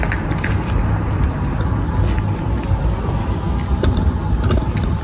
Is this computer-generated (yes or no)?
no